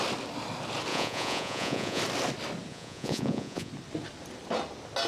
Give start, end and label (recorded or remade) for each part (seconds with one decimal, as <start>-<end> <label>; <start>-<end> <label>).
0.0-0.9 recorded; 0.9-2.0 remade; 2.0-2.7 recorded; 2.7-3.7 remade; 3.7-5.1 recorded